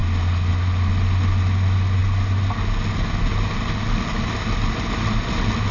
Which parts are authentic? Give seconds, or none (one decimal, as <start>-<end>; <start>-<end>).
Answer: 0.0-5.7